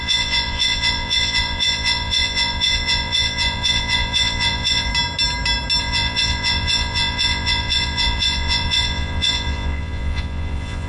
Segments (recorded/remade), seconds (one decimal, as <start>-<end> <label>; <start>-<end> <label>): 0.0-4.9 remade; 4.9-5.8 recorded; 5.8-10.9 remade